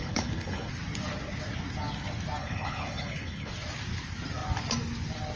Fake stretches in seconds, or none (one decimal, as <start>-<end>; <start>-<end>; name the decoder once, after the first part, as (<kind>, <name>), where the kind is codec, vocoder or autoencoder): 0.0-0.7 (codec, HILCodec); 2.4-3.5